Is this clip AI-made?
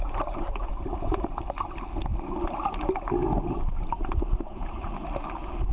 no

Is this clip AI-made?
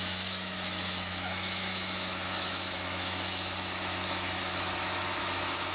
yes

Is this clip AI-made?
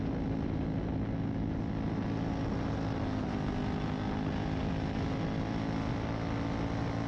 no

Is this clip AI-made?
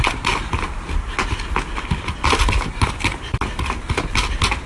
no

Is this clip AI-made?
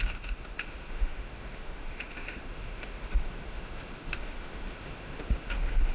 yes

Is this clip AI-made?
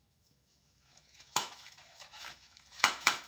yes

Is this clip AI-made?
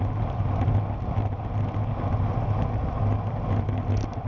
no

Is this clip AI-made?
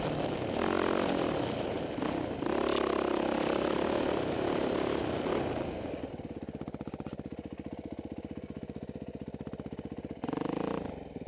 no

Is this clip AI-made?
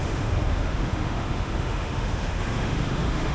yes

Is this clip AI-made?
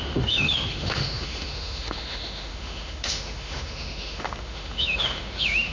yes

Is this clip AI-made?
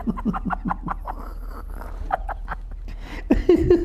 no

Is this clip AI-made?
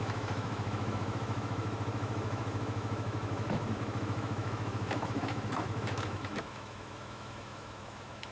yes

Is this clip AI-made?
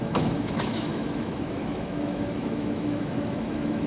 yes